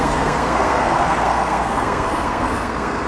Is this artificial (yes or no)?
yes